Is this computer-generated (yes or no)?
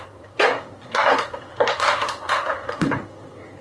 yes